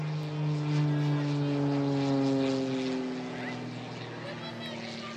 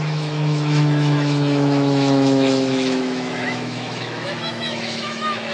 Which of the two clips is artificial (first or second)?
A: second